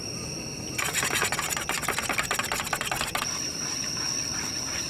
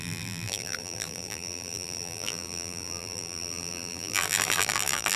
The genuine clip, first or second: first